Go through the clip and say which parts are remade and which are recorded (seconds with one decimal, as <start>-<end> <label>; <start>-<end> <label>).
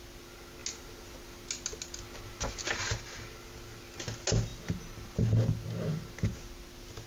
0.0-7.1 recorded